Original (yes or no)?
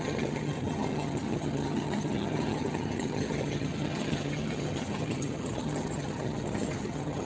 no